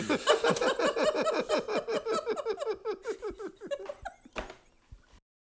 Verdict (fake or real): real